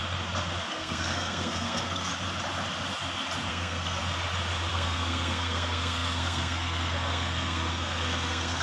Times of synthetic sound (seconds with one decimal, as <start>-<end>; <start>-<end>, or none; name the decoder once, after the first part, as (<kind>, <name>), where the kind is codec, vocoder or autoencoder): 0.7-2.1 (codec, SNAC); 3.5-4.0; 4.7-8.6